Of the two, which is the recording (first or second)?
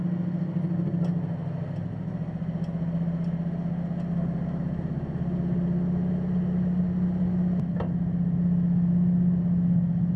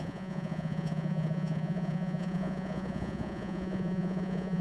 first